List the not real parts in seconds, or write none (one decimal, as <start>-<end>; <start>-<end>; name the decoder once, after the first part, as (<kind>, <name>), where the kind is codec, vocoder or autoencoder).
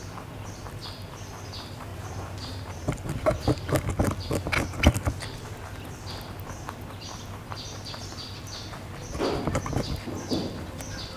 none